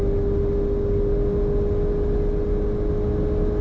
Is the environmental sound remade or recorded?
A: recorded